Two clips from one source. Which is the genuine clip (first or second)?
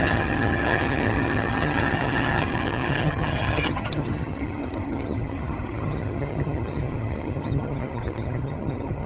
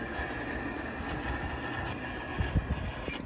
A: second